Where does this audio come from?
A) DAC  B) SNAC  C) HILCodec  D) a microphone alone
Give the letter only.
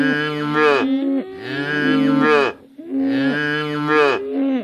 D